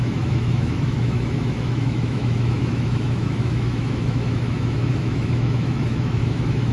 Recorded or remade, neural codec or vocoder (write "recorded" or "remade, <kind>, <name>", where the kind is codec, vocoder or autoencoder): remade, autoencoder, DAC-VAE